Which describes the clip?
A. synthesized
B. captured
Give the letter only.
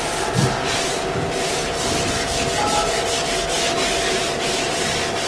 B